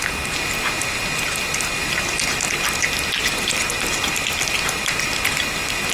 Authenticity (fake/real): real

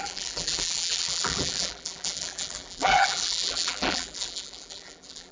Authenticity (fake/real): fake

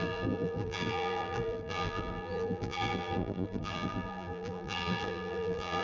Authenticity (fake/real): fake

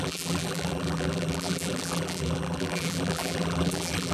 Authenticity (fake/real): fake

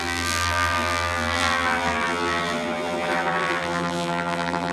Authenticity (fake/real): fake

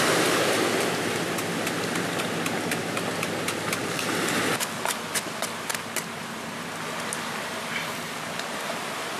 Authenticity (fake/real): real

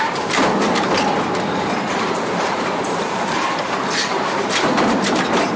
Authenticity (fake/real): fake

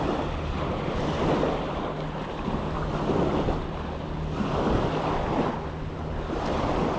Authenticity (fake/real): real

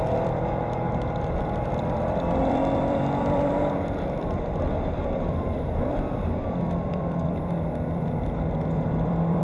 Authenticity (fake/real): fake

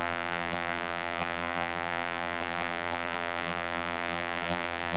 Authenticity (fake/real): fake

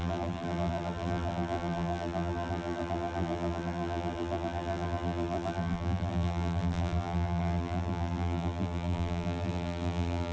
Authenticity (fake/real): fake